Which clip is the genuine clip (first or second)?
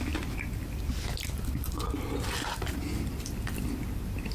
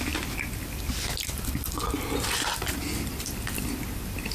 second